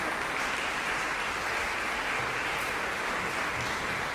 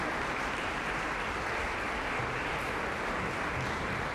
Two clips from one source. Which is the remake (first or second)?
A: second